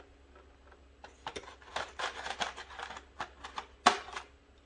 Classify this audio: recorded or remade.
recorded